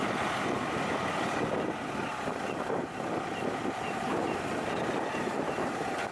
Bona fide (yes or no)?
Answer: no